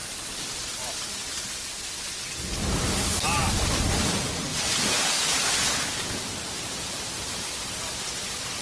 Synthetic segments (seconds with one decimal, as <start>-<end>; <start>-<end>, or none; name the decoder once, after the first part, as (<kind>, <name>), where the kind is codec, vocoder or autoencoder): 4.5-6.2 (vocoder, Vocos)